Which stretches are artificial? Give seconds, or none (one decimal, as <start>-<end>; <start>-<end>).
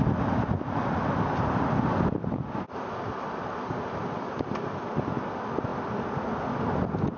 none